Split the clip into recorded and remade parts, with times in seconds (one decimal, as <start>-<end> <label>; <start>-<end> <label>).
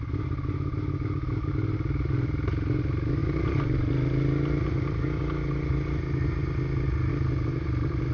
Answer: 0.0-8.1 recorded